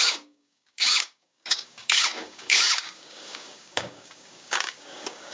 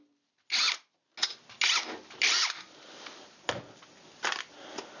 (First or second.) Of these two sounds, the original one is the second